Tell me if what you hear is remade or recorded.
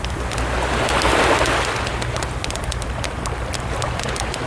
recorded